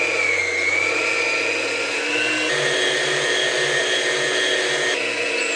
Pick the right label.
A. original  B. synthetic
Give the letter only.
A